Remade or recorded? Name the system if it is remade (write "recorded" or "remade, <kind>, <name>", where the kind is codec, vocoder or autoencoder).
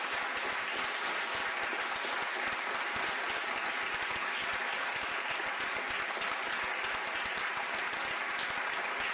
recorded